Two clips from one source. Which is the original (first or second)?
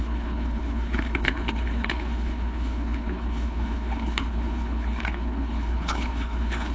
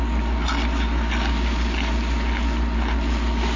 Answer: second